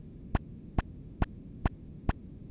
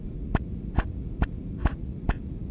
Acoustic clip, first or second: first